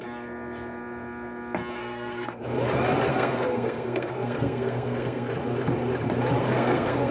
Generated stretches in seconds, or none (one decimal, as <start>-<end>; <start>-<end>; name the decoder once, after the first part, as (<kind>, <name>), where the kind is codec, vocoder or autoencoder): 1.8-2.4 (codec, SNAC); 3.1-5.3; 6.4-7.1